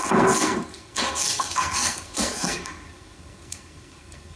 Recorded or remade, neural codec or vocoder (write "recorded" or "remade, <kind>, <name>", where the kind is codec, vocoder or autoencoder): remade, codec, SNAC